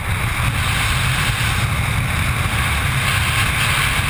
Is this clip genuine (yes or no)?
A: yes